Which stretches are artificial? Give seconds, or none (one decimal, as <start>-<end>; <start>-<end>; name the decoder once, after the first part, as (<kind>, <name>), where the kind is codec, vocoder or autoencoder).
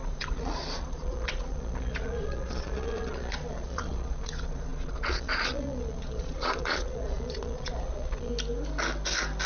0.0-8.3 (vocoder, Vocos)